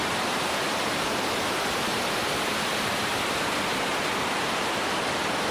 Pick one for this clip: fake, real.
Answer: real